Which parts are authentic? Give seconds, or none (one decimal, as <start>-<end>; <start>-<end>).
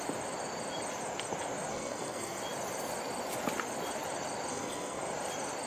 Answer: 0.0-1.7; 2.4-4.5; 5.0-5.7